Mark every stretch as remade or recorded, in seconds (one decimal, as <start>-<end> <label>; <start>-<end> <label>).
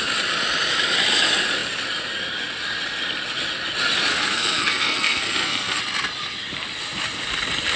0.0-4.1 recorded; 4.1-5.8 remade; 5.8-7.8 recorded